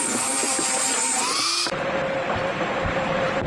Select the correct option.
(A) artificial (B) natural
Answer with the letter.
A